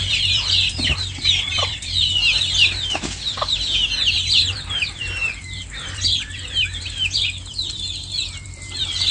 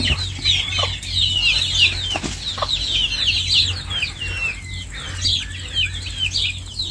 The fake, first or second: first